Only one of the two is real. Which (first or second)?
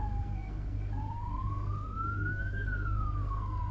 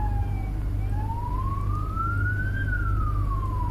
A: second